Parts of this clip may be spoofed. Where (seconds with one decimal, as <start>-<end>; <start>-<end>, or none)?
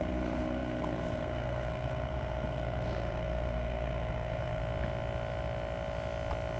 0.0-4.6